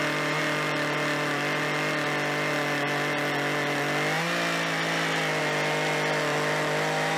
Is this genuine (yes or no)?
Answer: yes